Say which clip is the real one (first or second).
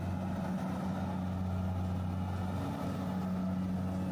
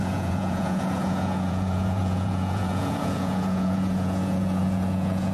first